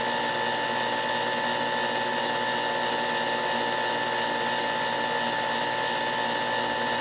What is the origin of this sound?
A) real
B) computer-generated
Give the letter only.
A